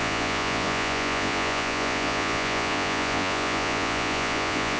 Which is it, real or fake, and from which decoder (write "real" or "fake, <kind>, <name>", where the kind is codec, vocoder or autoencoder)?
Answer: fake, vocoder, Vocos